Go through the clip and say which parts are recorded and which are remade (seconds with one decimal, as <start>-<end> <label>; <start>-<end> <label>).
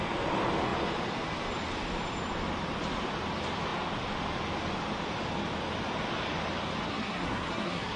0.0-6.9 recorded; 6.9-8.0 remade